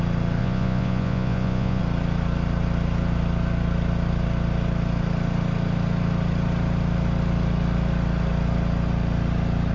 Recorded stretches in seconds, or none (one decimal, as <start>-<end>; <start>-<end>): 0.0-0.4; 1.8-9.7